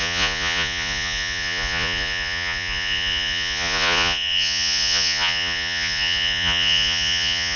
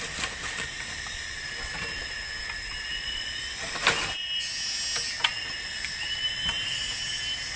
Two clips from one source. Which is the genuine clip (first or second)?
second